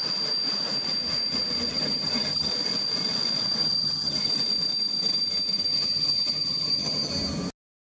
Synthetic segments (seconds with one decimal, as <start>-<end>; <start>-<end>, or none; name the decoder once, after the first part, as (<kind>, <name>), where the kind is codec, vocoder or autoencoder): 1.7-2.5 (vocoder, HiFi-GAN); 3.6-4.3; 5.7-7.1